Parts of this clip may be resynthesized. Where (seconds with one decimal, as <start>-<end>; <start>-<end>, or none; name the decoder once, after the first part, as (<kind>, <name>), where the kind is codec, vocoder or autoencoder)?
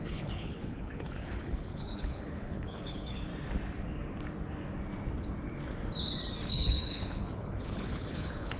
0.0-3.3 (codec, HILCodec); 6.5-8.6